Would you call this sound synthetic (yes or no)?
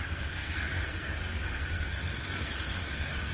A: yes